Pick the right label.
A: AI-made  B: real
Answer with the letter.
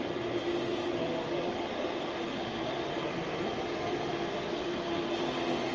B